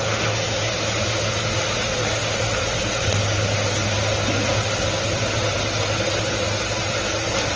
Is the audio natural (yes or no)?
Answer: yes